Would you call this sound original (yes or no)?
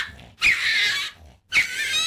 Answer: yes